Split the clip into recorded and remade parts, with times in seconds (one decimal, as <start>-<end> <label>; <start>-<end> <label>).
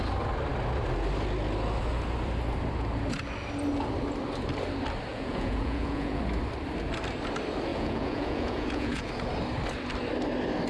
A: 0.0-5.1 recorded; 5.1-6.2 remade; 6.2-7.7 recorded; 7.7-9.1 remade; 9.1-10.7 recorded